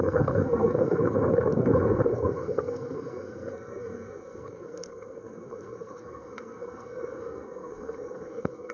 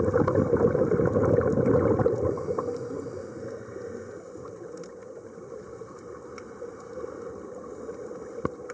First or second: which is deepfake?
first